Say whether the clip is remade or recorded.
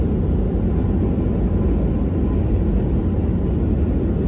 recorded